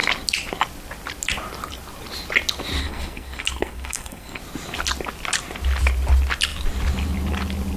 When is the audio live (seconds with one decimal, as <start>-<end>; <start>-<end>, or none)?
0.0-2.8; 4.4-7.8